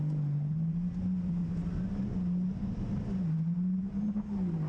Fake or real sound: real